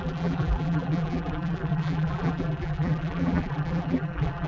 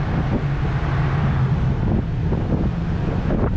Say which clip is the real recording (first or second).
second